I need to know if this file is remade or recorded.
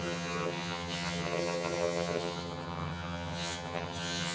remade